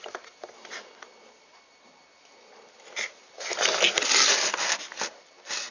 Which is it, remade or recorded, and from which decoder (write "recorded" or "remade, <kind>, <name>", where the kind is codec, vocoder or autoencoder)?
recorded